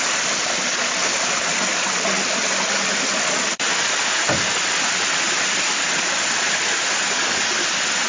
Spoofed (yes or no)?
no